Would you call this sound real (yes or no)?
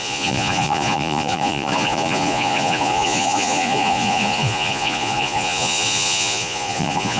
no